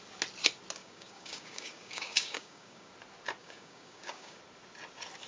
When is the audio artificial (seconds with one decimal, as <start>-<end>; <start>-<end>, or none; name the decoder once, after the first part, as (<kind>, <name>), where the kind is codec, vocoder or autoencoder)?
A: 0.8-2.9 (codec, DAC); 3.4-4.4